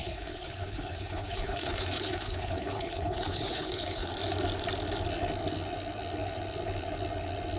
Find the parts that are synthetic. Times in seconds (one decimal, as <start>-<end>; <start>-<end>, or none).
0.0-4.1